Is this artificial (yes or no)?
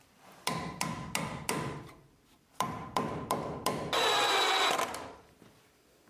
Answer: no